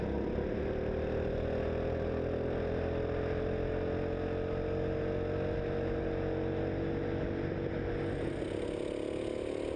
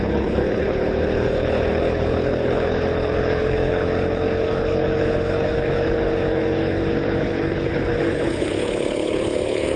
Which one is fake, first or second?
second